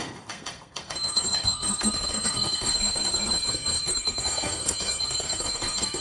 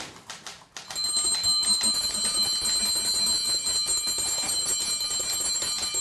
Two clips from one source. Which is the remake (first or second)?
first